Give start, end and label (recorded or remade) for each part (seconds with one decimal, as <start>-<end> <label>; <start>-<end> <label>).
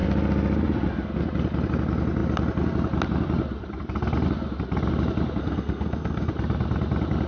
0.0-5.4 recorded; 5.4-6.3 remade; 6.3-7.3 recorded